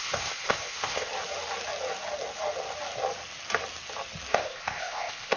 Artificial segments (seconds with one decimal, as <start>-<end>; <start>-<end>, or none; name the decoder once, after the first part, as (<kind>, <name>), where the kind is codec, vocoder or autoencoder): 0.0-1.1 (codec, ZipCodec); 4.3-5.4